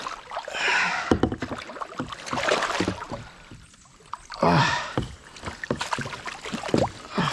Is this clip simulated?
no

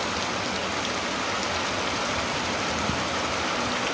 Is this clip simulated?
no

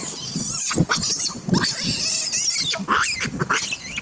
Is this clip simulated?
no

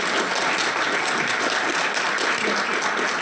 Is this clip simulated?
no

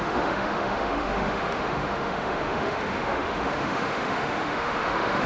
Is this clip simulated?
yes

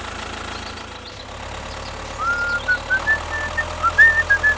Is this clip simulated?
no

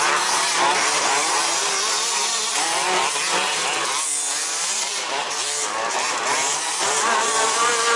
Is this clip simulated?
yes